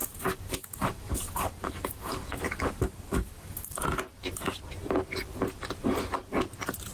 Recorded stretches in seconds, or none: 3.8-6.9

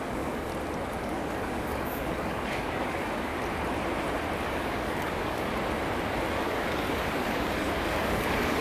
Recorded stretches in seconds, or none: 0.5-1.0; 3.3-4.4; 5.5-6.4